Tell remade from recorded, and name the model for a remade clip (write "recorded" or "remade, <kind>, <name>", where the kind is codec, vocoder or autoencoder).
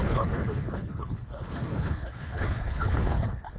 remade, codec, HILCodec